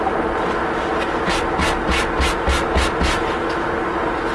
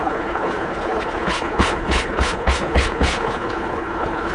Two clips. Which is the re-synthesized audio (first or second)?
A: second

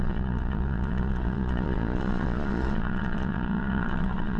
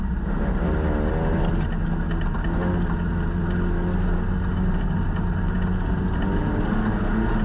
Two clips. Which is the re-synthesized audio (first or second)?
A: first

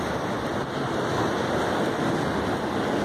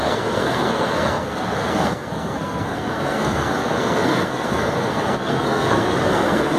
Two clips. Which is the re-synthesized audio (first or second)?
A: second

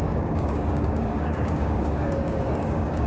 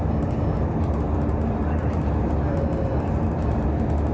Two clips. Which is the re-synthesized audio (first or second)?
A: first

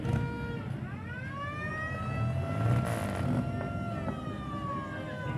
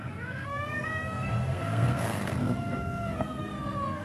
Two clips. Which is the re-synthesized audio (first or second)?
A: second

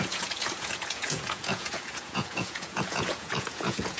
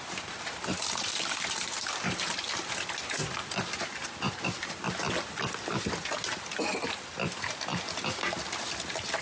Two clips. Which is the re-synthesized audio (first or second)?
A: first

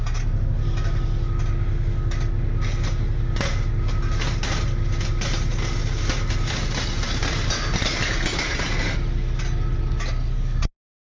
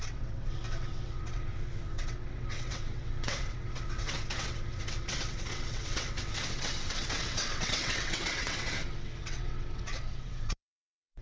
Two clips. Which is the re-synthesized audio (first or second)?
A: second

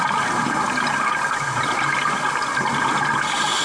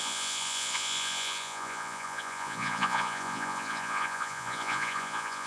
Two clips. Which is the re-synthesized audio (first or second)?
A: second